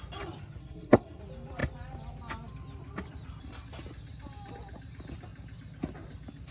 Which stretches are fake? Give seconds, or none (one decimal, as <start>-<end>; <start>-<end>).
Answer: 0.6-1.2